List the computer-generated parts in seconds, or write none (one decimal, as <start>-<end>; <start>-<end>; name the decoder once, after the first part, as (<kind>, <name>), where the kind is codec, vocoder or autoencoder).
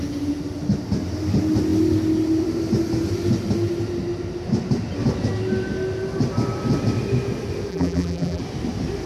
7.7-8.4 (vocoder, BigVGAN v2)